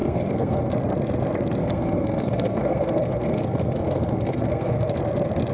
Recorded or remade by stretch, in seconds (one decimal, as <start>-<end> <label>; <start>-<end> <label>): 0.0-0.7 remade; 0.7-1.6 recorded; 1.6-4.9 remade; 4.9-5.5 recorded